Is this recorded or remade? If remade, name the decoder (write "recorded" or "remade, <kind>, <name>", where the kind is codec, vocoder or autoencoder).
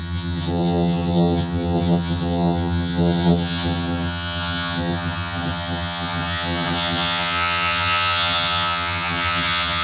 remade, vocoder, HiFi-GAN